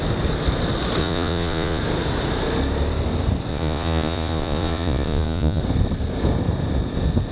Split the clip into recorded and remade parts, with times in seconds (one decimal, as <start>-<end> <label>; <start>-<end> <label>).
0.0-1.0 recorded; 1.0-1.8 remade; 1.8-3.5 recorded; 3.5-5.6 remade; 5.6-7.3 recorded